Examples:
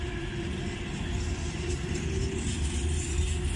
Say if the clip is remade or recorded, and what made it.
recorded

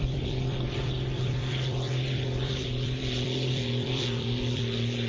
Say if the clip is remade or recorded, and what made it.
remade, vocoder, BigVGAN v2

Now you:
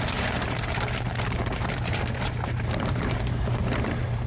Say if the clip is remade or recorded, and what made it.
remade, vocoder, BigVGAN v2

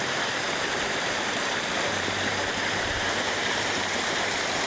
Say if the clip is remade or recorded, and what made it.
remade, vocoder, BigVGAN v2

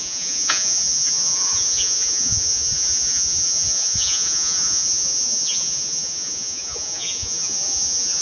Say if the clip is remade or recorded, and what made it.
remade, vocoder, Vocos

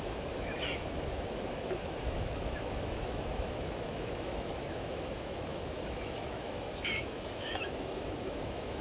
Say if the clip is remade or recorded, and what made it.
remade, autoencoder, DAC-VAE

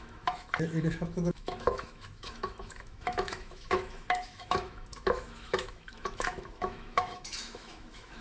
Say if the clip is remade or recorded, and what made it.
remade, autoencoder, DAC-VAE